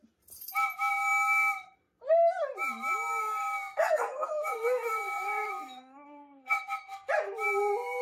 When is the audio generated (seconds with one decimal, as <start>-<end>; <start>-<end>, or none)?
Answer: 3.2-7.1